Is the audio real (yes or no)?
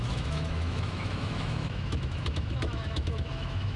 no